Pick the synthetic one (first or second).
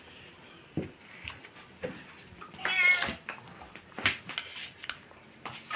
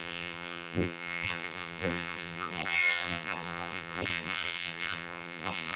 second